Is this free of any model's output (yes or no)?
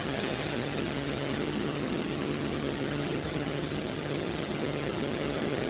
no